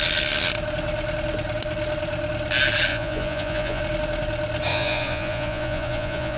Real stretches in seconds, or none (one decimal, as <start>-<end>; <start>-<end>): 0.0-2.9; 3.8-4.7